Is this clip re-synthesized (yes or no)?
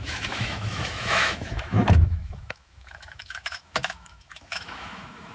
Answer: yes